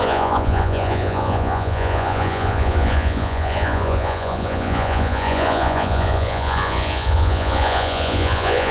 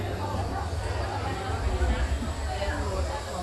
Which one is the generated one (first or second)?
first